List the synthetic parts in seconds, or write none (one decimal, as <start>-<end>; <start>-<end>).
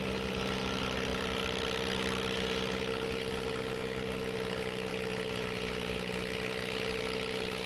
none